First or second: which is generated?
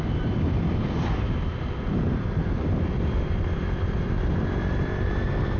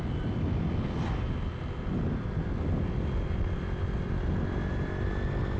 first